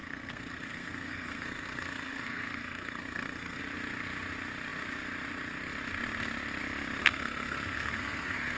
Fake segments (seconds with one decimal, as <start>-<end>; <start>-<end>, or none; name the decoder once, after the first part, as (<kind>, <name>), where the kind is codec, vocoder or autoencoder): 0.0-3.6 (codec, SNAC); 7.0-8.6